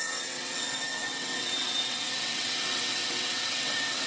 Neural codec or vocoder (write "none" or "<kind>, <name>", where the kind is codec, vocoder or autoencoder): vocoder, WaveNeXt